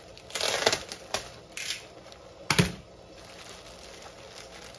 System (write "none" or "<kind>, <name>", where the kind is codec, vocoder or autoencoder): none